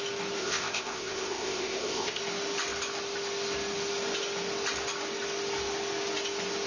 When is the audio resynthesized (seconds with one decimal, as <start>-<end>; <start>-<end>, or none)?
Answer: 0.4-2.2